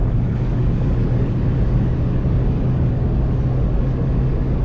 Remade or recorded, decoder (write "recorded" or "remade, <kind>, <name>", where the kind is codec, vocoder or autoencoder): remade, codec, DAC